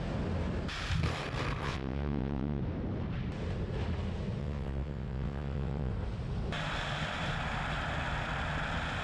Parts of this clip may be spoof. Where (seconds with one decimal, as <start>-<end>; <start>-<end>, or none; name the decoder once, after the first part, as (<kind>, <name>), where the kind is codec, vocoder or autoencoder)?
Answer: 1.6-2.6 (vocoder, WaveNeXt); 4.4-5.9

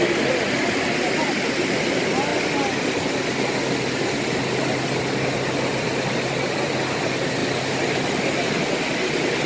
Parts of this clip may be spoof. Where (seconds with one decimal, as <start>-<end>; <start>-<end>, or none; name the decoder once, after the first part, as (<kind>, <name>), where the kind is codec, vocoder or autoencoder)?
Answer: none

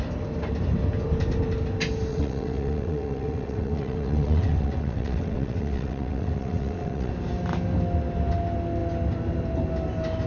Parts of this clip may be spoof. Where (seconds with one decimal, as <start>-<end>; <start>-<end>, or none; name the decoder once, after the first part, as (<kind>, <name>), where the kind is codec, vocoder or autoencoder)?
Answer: 2.1-7.1 (vocoder, WaveNeXt)

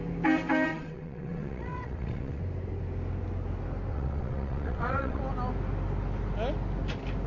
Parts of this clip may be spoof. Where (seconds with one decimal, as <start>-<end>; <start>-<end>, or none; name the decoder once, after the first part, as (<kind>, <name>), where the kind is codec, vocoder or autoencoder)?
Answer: 0.7-2.4 (vocoder, WaveNeXt); 3.9-5.2

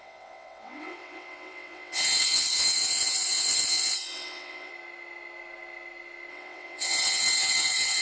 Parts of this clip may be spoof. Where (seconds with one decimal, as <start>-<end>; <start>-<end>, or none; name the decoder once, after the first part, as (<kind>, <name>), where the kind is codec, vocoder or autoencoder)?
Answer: 0.0-4.7 (vocoder, WaveNeXt); 6.3-8.0

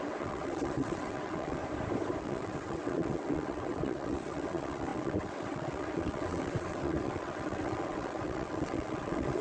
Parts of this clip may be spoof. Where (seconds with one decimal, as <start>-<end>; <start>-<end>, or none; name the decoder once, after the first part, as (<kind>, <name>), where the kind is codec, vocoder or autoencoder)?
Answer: 0.0-1.6 (vocoder, WaveNeXt); 2.2-9.4

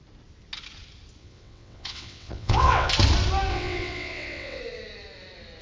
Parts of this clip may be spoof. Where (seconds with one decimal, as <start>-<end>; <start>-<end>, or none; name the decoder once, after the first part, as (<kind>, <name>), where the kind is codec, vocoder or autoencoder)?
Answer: 1.2-2.9 (vocoder, WaveNeXt); 3.5-4.6

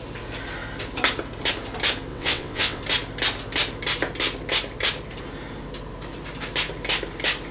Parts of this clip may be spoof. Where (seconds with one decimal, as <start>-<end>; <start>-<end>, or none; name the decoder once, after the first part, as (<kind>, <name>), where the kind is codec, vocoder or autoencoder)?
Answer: 2.1-2.8 (vocoder, WaveNeXt)